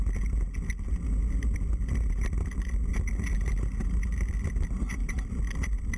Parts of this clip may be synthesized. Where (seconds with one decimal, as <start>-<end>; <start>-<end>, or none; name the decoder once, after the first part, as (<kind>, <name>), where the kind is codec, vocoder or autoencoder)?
1.2-3.1 (vocoder, BigVGAN v2); 3.8-6.0